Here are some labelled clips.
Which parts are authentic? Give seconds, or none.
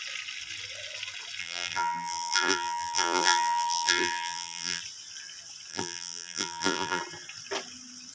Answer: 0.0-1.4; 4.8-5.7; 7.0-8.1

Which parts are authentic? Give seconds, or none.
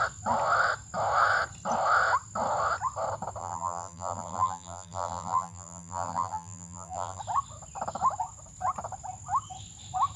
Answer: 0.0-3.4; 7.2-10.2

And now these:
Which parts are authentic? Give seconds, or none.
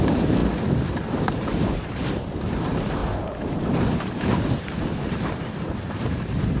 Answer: 0.4-1.2; 3.0-3.6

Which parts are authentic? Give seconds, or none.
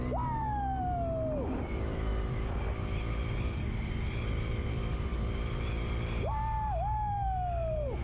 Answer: 0.0-5.1; 5.6-8.0